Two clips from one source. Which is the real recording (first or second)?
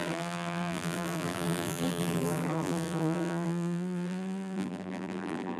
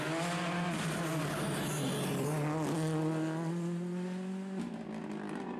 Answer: second